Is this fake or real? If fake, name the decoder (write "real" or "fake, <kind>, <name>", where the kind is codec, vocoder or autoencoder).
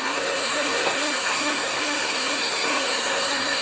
fake, codec, SNAC